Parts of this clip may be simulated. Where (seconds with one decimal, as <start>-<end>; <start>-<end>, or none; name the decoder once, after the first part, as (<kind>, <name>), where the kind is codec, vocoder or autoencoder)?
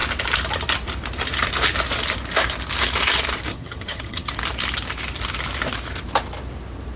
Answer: 3.5-4.3 (vocoder, HiFi-GAN)